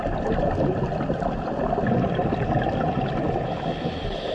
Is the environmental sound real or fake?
real